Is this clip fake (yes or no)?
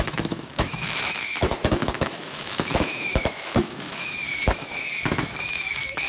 yes